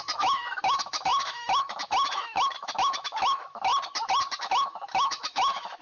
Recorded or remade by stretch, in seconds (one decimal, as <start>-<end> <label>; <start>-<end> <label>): 0.0-3.7 remade; 3.7-4.4 recorded; 4.4-5.8 remade